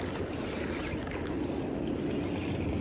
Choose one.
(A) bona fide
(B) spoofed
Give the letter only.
A